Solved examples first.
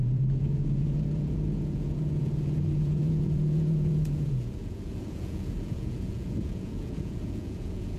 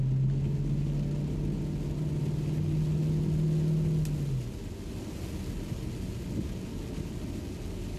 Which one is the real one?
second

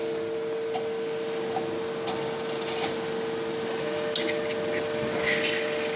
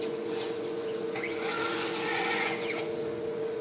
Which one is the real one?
first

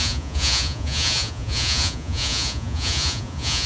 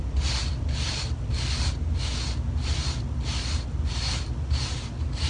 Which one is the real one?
second